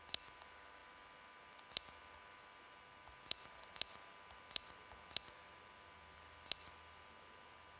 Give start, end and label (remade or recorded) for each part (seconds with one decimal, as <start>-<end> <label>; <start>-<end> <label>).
0.0-7.8 recorded